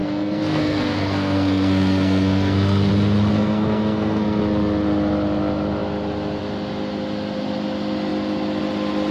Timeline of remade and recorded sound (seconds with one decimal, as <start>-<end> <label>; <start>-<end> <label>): 0.0-2.9 remade; 2.9-3.3 recorded; 3.3-4.4 remade; 4.4-9.1 recorded

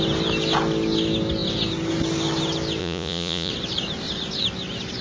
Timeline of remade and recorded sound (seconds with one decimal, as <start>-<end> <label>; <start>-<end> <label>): 0.0-2.8 recorded; 2.8-3.5 remade; 3.5-5.0 recorded

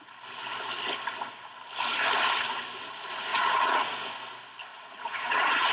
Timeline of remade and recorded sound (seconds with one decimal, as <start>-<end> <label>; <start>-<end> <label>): 0.0-3.3 recorded; 3.3-4.1 remade; 4.1-4.7 recorded; 4.7-5.7 remade

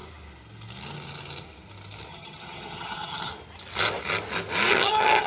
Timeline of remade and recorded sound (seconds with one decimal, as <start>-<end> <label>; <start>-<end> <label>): 0.0-2.1 recorded; 2.1-3.3 remade; 3.3-4.7 recorded; 4.7-5.3 remade

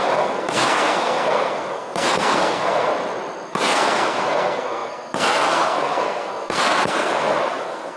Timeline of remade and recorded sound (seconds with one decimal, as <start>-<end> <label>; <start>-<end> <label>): 0.0-2.9 remade; 2.9-3.5 recorded; 3.5-8.0 remade

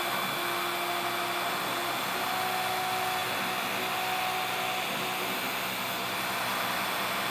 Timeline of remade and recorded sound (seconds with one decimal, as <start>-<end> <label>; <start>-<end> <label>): 0.0-7.3 recorded